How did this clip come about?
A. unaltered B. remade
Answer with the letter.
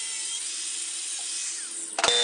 A